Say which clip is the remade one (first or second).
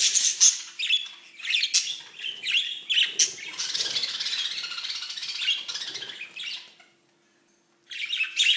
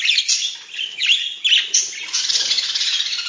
second